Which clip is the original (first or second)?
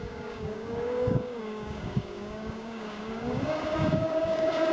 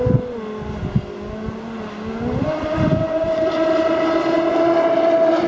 second